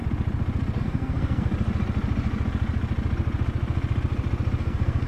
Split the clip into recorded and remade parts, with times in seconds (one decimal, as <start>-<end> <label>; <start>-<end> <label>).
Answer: 0.0-0.8 recorded; 0.8-1.5 remade; 1.5-4.6 recorded; 4.6-5.1 remade

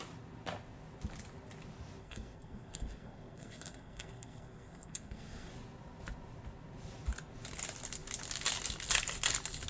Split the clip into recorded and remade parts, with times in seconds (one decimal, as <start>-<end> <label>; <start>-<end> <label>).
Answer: 0.0-2.0 recorded; 2.0-5.5 remade; 5.5-9.7 recorded

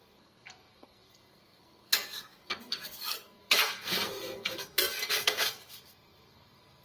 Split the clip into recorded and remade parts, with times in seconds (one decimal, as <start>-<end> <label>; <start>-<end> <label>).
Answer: 0.0-6.8 remade

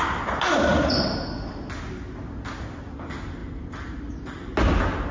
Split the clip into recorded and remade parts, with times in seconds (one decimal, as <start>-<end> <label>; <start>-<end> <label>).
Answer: 0.0-5.1 recorded